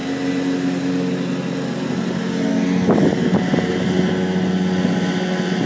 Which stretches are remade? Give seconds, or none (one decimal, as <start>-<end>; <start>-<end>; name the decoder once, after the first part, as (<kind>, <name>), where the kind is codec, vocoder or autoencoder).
none